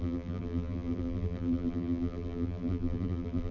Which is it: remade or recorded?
remade